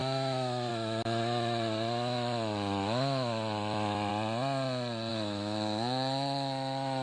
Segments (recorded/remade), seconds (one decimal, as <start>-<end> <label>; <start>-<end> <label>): 0.0-4.1 remade; 4.1-5.1 recorded; 5.1-7.0 remade